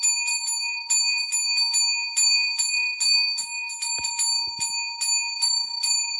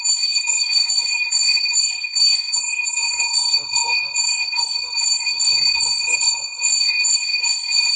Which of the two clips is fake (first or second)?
second